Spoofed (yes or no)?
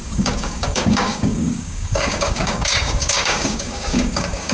yes